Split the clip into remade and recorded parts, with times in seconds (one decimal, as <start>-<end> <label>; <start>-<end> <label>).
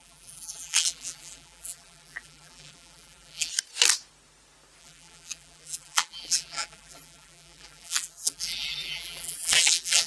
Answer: 0.0-3.5 remade; 3.5-4.8 recorded; 4.8-10.1 remade